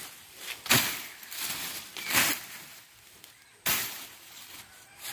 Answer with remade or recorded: recorded